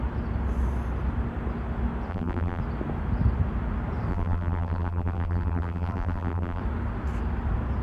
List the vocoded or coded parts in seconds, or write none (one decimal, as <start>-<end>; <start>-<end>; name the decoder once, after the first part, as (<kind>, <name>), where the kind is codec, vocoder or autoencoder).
2.1-2.6 (vocoder, BigVGAN v2); 4.1-6.6